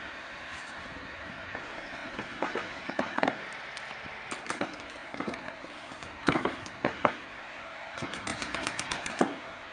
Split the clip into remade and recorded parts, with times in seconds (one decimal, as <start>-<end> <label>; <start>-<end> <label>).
0.0-3.4 remade; 3.4-4.4 recorded; 4.4-9.7 remade